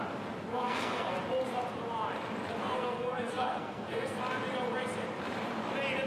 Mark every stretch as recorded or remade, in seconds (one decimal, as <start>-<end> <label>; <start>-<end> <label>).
0.0-0.5 recorded; 0.5-1.2 remade; 1.2-2.6 recorded; 2.6-4.2 remade; 4.2-6.1 recorded